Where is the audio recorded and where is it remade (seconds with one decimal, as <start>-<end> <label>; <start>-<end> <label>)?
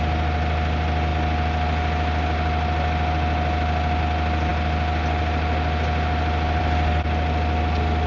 0.0-8.1 recorded